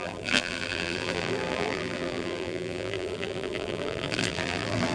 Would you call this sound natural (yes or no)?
no